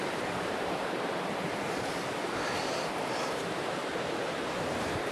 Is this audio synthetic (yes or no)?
yes